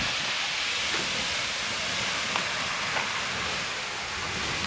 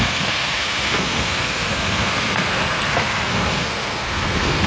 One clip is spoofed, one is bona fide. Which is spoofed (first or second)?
second